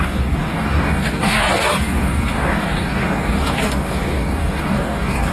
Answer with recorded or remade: remade